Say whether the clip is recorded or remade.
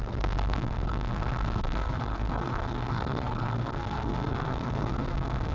remade